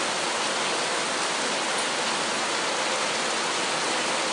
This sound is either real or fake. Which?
real